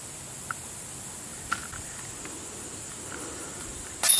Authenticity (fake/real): real